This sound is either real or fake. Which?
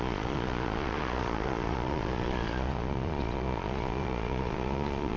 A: fake